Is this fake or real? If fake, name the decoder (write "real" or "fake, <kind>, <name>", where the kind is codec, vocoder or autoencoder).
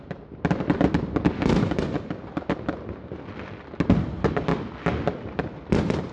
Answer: real